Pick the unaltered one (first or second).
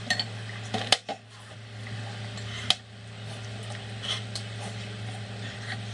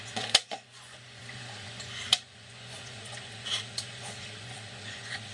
first